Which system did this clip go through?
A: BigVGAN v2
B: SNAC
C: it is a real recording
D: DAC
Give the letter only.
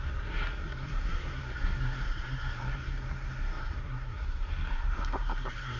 B